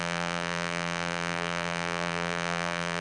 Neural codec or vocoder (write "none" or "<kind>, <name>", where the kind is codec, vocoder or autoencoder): vocoder, BigVGAN v2